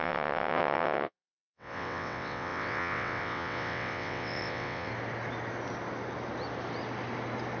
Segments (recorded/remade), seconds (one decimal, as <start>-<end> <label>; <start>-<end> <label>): 0.0-4.9 remade; 4.9-7.6 recorded